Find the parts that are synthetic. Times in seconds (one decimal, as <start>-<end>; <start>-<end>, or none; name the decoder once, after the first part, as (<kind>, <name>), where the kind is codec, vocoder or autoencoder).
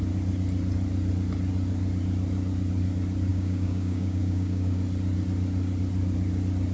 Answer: 3.3-4.8 (codec, DAC)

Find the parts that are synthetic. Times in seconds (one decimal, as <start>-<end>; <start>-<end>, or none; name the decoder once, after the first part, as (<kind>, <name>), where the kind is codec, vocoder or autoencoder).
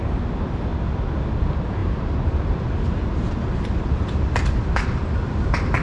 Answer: 0.0-5.8 (vocoder, BigVGAN v2)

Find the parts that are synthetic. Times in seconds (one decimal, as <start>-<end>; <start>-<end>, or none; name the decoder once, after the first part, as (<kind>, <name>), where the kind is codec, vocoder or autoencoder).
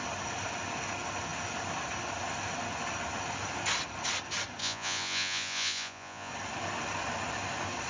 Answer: 4.6-6.3 (vocoder, Vocos)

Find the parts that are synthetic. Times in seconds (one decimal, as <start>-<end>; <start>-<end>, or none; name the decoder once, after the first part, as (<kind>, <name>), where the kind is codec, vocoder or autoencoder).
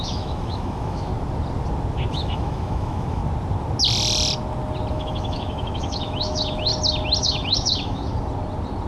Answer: 0.0-1.1 (autoencoder, DAC-VAE); 2.1-3.2; 4.9-6.7; 7.2-8.0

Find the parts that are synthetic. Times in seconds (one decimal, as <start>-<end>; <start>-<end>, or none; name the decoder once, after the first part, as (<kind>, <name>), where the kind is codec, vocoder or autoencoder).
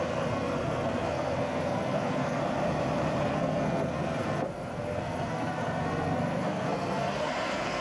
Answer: 0.0-2.4 (codec, SNAC); 3.2-7.8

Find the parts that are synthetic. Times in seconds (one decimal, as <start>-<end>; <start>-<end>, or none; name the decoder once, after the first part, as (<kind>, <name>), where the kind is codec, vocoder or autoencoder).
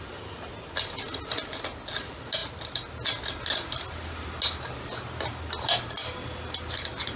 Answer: none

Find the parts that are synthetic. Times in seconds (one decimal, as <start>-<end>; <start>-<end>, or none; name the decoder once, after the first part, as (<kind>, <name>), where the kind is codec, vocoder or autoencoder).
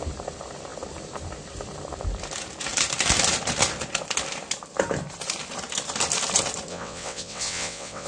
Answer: 6.7-8.1 (vocoder, WaveNeXt)